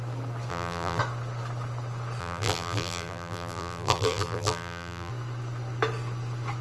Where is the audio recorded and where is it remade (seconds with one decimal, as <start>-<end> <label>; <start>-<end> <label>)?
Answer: 0.0-0.5 recorded; 0.5-1.0 remade; 1.0-2.2 recorded; 2.2-5.1 remade; 5.1-6.6 recorded